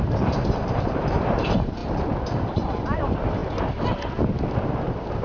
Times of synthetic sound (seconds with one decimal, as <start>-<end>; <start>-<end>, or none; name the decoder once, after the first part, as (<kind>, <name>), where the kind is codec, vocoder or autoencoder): 0.0-1.8 (vocoder, BigVGAN v2); 3.0-3.4; 4.6-5.2